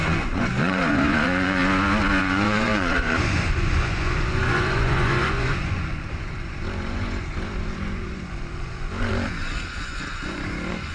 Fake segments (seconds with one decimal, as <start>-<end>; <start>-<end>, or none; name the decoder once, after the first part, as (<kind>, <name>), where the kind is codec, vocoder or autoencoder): 0.0-1.6 (vocoder, Vocos); 2.2-10.9